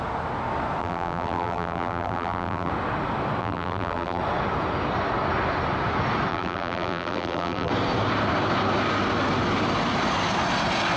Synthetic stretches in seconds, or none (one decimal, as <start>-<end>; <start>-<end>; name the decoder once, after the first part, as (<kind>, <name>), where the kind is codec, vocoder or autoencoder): 0.8-2.7 (vocoder, BigVGAN v2); 3.4-4.2; 6.3-7.7